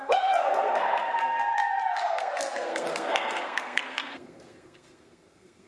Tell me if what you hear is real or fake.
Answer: fake